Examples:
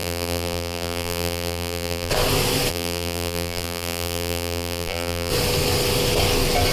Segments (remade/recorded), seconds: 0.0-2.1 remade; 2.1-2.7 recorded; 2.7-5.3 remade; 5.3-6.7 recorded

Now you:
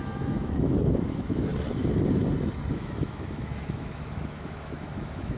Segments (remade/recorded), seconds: 0.0-1.5 remade; 1.5-2.7 recorded; 2.7-5.4 remade

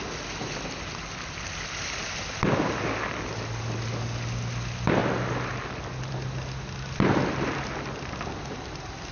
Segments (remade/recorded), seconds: 0.0-9.1 recorded

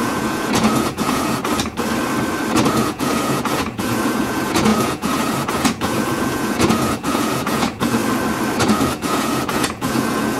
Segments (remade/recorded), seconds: 0.0-1.4 remade; 1.4-2.7 recorded; 2.7-8.0 remade; 8.0-8.6 recorded; 8.6-10.4 remade